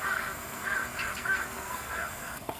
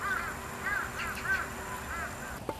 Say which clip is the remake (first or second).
first